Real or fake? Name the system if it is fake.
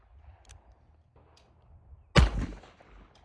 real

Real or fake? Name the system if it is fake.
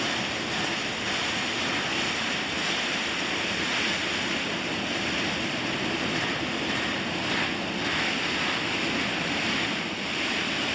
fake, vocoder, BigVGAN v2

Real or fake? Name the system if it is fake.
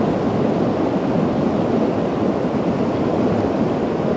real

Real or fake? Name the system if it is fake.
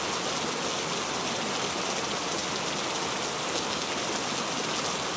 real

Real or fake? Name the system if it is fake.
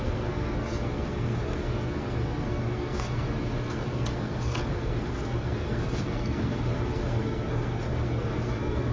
fake, codec, SNAC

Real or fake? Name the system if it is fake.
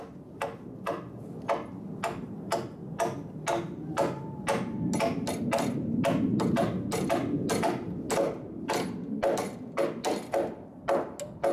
real